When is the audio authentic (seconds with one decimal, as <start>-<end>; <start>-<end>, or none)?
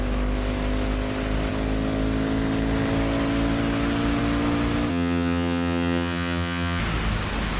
0.0-4.9; 6.8-7.6